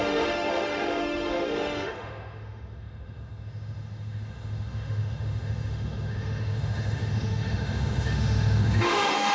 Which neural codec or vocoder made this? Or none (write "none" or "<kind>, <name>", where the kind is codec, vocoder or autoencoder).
autoencoder, DAC-VAE